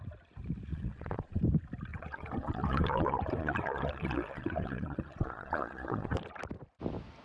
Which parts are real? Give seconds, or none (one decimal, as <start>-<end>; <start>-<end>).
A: 0.0-0.7; 1.4-1.9; 6.2-7.2

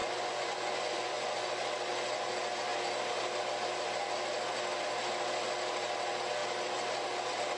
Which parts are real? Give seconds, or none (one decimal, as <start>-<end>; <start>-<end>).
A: 1.5-7.6

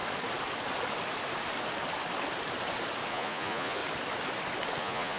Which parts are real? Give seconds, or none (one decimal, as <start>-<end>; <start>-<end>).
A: 0.0-3.1; 3.8-4.8